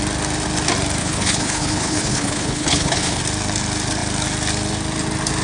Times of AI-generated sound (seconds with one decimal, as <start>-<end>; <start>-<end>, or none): 1.0-3.2